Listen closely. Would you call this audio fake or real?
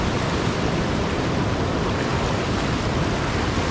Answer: fake